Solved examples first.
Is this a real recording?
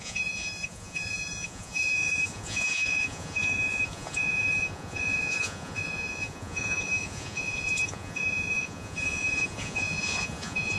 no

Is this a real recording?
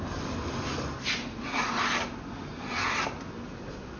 yes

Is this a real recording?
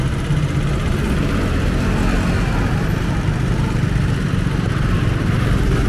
yes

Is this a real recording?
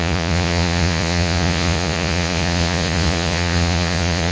no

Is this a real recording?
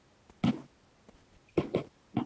yes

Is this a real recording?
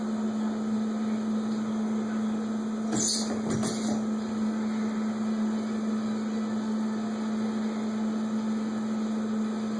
yes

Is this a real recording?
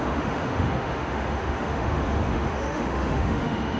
no